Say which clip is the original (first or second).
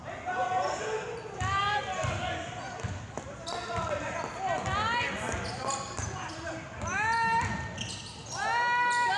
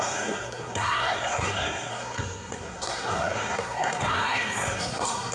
first